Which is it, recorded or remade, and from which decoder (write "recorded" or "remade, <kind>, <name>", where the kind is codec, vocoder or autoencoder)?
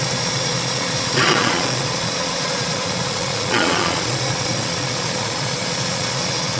remade, vocoder, Vocos